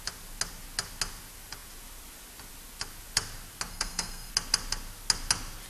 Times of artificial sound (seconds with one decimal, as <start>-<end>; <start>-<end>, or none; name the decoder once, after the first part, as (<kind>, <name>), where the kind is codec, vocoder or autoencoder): 3.7-4.3 (codec, SNAC)